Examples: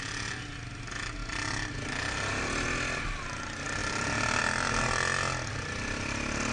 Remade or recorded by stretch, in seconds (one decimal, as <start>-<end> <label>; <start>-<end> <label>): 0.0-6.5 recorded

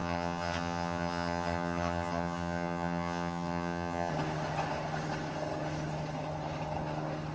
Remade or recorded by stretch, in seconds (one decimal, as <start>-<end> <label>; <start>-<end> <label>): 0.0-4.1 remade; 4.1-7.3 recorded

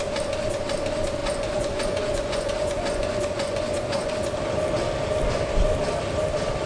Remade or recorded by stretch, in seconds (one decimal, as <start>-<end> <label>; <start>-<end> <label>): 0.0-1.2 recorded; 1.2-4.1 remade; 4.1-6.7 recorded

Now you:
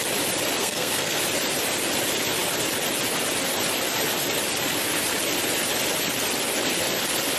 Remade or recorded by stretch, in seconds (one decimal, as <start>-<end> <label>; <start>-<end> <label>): 0.0-0.6 recorded; 0.6-1.2 remade; 1.2-7.4 recorded

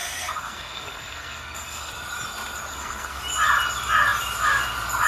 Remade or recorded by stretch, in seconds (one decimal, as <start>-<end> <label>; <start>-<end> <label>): 0.0-1.9 remade; 1.9-2.7 recorded; 2.7-3.2 remade; 3.2-5.1 recorded

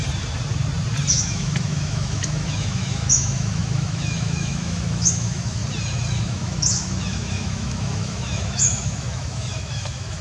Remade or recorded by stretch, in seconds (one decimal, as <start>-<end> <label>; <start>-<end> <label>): 0.0-1.1 recorded; 1.1-5.6 remade; 5.6-6.2 recorded; 6.2-10.2 remade

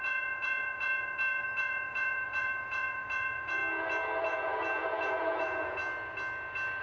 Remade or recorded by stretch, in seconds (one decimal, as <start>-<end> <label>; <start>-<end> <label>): 0.0-3.6 remade; 3.6-4.2 recorded; 4.2-5.8 remade; 5.8-6.8 recorded